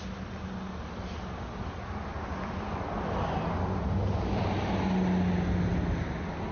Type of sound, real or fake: real